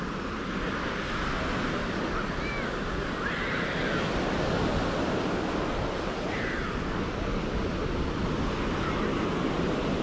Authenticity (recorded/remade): recorded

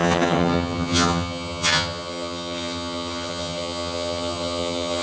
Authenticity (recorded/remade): remade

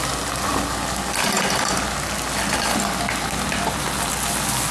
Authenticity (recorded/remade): recorded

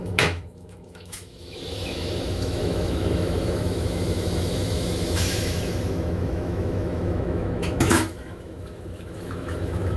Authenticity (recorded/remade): remade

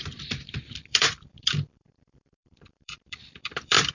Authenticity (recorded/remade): remade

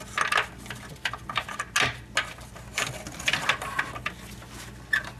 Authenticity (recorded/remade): recorded